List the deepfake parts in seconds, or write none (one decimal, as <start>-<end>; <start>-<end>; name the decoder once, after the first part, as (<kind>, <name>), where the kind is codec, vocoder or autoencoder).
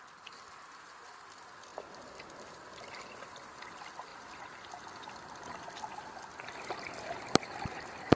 none